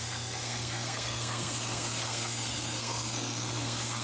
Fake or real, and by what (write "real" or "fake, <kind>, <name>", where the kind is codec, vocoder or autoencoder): fake, codec, SNAC